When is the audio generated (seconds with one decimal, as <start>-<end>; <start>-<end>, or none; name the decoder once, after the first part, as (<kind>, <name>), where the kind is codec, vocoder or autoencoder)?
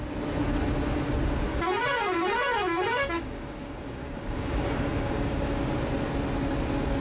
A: 1.5-5.7 (codec, DAC)